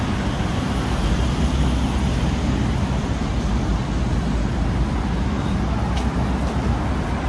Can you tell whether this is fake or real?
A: real